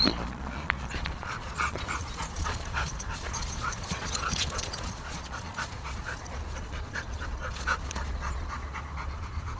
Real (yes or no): no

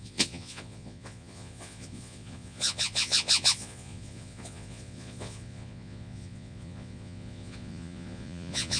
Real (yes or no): no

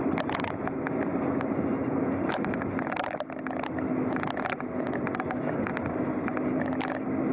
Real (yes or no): yes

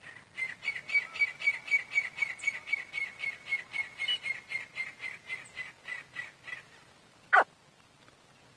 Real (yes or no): yes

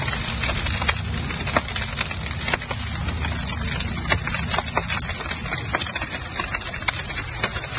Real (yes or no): yes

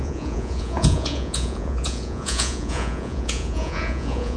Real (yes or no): no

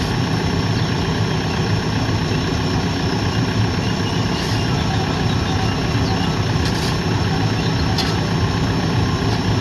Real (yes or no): yes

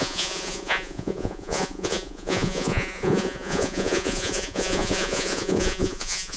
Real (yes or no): no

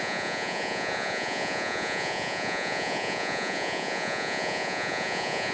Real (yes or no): no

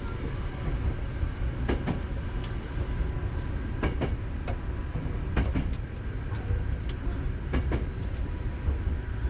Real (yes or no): yes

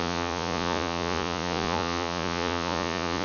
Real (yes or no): no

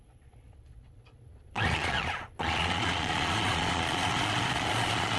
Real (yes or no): no